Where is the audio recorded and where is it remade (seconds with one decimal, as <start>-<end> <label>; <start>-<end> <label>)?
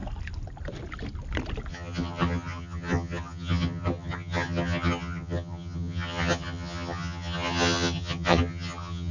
0.0-1.7 recorded; 1.7-9.1 remade